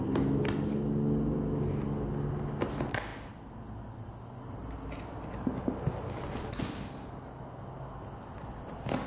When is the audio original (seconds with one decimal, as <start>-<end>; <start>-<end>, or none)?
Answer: 0.0-9.1